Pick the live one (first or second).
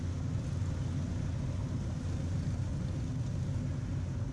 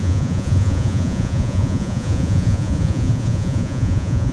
first